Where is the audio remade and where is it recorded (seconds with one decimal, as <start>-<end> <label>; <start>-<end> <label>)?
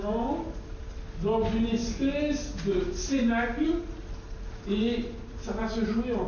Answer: 0.0-6.3 recorded